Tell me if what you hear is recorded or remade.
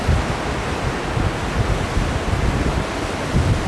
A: recorded